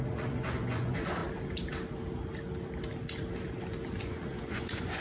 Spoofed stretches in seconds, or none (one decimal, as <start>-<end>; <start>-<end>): 0.0-1.2; 4.0-5.0